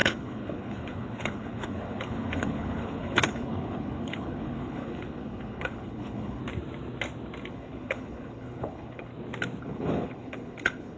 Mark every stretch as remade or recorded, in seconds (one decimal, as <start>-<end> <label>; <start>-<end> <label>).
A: 0.0-6.4 remade; 6.4-7.5 recorded; 7.5-9.1 remade; 9.1-9.6 recorded; 9.6-11.0 remade